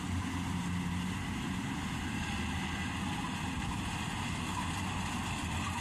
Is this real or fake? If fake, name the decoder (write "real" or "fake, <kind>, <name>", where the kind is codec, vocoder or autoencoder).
real